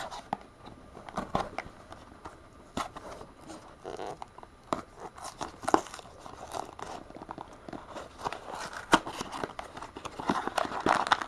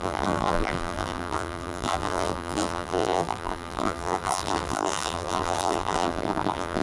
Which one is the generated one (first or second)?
second